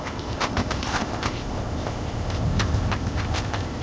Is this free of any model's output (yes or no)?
no